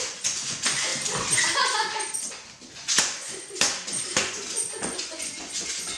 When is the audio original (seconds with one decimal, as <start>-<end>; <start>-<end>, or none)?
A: 0.9-2.3